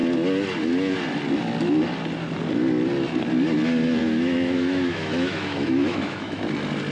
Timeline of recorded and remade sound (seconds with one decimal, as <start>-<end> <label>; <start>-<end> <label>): 0.0-4.0 recorded; 4.0-6.4 remade; 6.4-6.9 recorded